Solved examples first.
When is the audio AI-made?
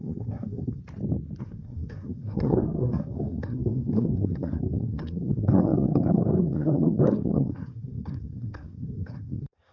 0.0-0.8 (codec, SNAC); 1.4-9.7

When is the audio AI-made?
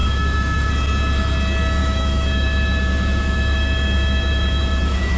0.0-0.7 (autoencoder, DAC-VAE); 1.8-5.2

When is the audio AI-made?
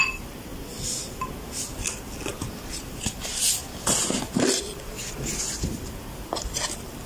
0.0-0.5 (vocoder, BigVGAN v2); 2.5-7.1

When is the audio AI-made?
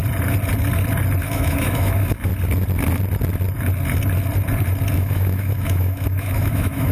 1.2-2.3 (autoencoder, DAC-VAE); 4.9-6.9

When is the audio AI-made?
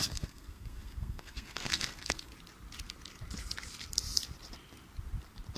0.0-2.3 (codec, SNAC)